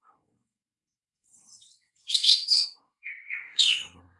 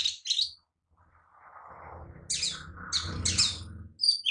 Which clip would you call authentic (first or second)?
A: second